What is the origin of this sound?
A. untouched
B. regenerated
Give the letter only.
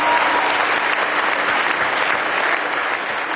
A